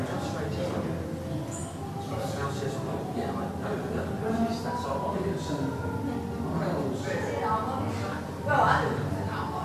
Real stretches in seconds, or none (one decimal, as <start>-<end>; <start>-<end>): 0.0-9.6